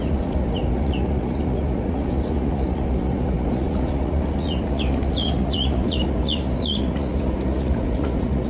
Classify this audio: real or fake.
fake